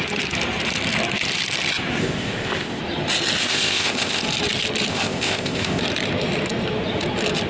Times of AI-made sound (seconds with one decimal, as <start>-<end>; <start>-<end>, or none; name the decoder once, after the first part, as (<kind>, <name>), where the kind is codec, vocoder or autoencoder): 2.0-2.8 (codec, ZipCodec); 3.4-4.2; 4.9-5.8